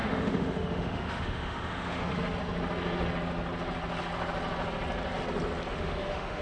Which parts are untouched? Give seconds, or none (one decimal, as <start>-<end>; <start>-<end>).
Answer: 2.1-5.7